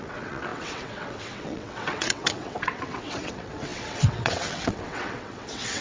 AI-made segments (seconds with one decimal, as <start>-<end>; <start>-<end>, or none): 0.0-5.8